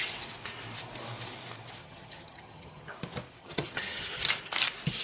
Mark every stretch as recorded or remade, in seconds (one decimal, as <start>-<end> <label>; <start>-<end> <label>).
0.0-1.8 recorded; 1.8-2.9 remade; 2.9-3.4 recorded; 3.4-4.2 remade; 4.2-5.0 recorded